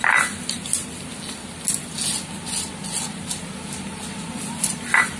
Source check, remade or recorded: recorded